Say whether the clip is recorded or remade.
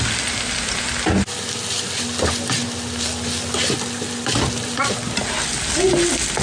recorded